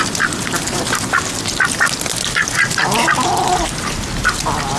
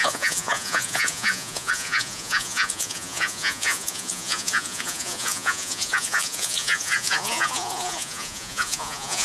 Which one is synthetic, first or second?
second